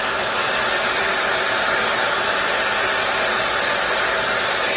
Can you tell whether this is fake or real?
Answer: real